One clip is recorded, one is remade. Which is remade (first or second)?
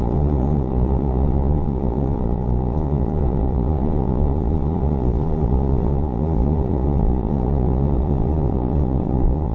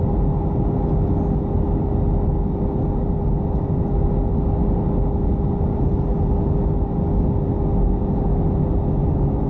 first